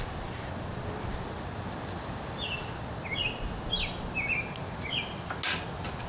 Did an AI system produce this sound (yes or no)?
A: no